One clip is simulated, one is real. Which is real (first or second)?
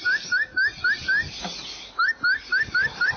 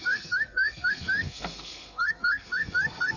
first